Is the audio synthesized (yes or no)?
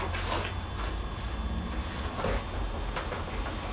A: no